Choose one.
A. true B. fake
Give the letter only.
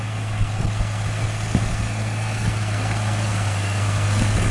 B